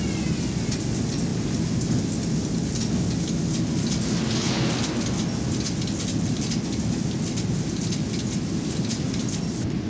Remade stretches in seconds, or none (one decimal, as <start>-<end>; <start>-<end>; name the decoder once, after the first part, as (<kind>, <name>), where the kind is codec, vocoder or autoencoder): none